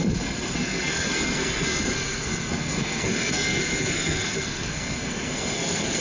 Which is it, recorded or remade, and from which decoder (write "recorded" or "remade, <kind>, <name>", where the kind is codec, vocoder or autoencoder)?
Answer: remade, codec, SNAC